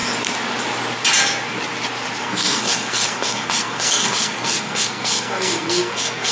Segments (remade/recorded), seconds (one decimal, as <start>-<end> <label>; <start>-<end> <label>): 0.0-2.2 recorded; 2.2-6.3 remade